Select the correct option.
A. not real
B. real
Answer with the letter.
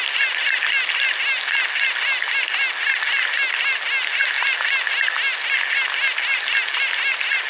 B